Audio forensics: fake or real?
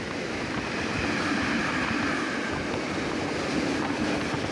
real